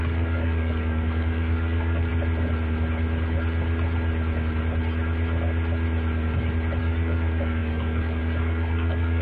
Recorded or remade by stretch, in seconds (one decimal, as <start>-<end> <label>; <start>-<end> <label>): 0.0-2.1 remade; 2.1-6.8 recorded; 6.8-9.2 remade